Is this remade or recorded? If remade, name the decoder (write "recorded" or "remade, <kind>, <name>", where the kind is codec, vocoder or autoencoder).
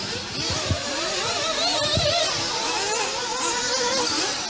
recorded